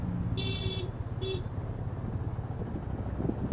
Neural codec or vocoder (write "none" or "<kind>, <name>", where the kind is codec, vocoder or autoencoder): none